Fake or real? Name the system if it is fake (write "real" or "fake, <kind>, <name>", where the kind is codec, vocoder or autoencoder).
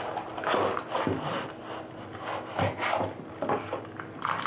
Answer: real